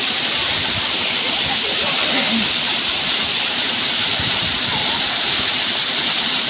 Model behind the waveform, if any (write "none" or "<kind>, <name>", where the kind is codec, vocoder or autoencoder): vocoder, BigVGAN v2